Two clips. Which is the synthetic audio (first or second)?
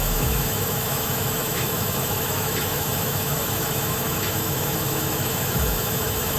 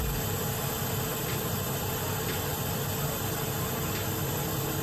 first